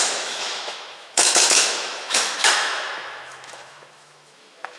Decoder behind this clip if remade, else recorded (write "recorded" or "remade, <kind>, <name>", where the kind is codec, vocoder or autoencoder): remade, autoencoder, DAC-VAE